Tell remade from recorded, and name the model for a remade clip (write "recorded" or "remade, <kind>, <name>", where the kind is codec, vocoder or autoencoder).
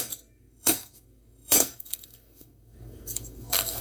remade, codec, SNAC